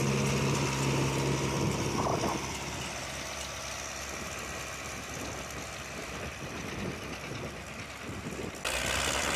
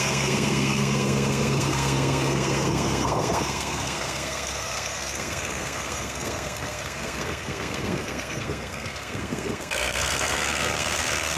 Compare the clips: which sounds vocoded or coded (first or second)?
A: second